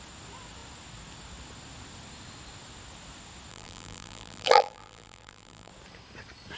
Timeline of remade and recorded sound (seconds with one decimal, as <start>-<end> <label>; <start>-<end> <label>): 0.0-3.5 recorded; 3.5-5.7 remade; 5.7-6.6 recorded